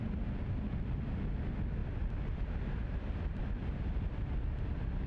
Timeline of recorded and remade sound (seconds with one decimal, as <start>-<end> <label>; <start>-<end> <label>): 0.0-5.1 recorded